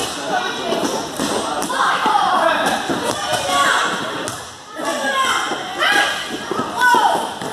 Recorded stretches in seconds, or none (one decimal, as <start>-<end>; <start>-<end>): 0.0-7.5